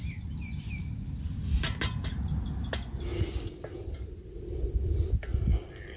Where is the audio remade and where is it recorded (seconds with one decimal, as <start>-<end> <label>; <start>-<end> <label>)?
0.0-6.0 recorded